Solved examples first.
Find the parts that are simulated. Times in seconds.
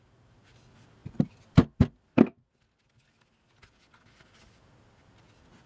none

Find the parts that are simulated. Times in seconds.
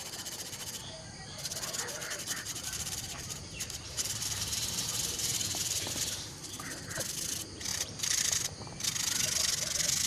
2.0-6.5 (vocoder, BigVGAN v2); 7.7-8.4